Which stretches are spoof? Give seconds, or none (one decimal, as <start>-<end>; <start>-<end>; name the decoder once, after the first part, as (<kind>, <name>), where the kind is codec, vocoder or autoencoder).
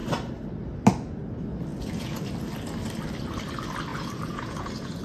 1.7-2.2 (vocoder, Vocos); 3.9-5.0